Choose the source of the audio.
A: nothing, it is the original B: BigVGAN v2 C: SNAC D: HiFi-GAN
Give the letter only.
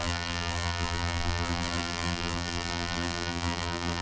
B